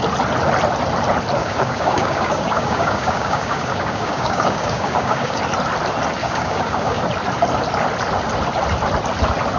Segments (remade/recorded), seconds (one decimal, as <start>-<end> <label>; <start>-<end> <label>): 0.0-1.4 recorded; 1.4-5.4 remade; 5.4-6.2 recorded; 6.2-7.0 remade; 7.0-9.6 recorded